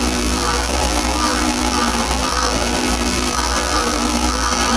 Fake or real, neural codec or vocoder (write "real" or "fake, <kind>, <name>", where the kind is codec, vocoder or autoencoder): fake, vocoder, BigVGAN v2